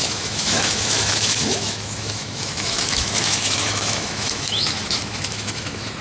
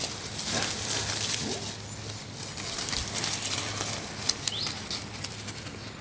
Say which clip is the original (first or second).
second